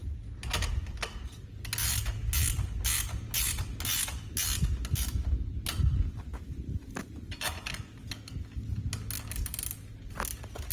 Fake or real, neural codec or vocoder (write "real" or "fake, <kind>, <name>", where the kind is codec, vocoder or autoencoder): real